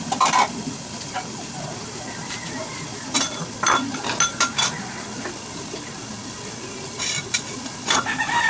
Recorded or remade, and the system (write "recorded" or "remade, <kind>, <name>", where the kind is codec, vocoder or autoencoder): remade, vocoder, BigVGAN v2